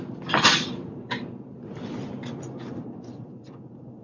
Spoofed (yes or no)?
yes